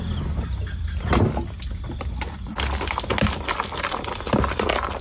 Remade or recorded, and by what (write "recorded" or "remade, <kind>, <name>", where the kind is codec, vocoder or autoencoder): recorded